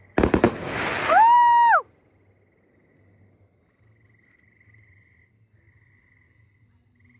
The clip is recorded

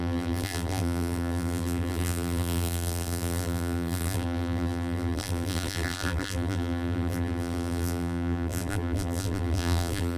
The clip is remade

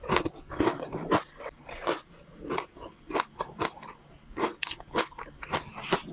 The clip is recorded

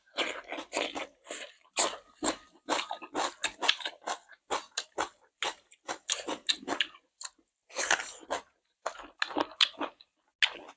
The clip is recorded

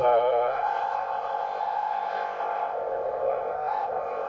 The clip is remade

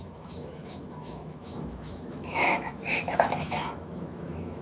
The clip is remade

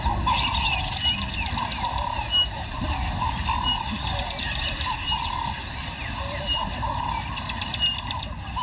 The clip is recorded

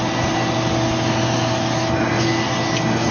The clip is recorded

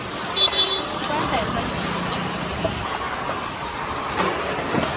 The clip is recorded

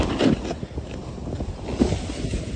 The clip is recorded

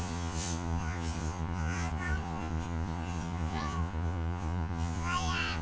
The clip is remade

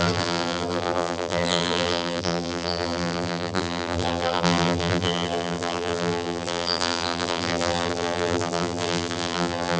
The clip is remade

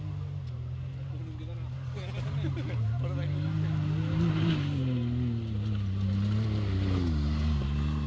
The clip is recorded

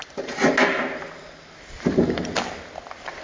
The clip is recorded